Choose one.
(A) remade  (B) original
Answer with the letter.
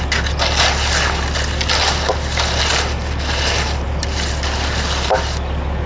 B